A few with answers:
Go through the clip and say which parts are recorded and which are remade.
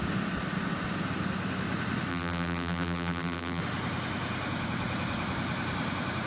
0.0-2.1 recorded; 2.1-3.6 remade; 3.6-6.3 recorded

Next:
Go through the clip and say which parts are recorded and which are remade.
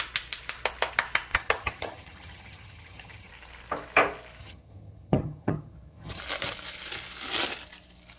0.0-1.3 recorded; 1.3-3.3 remade; 3.3-4.4 recorded; 4.4-6.2 remade; 6.2-8.2 recorded